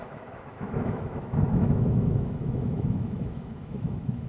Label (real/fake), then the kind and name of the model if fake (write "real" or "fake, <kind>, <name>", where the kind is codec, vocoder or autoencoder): fake, autoencoder, DAC-VAE